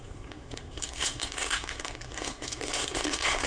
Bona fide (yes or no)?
no